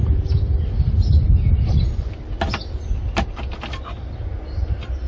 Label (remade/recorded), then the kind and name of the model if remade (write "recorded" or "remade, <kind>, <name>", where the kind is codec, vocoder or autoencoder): recorded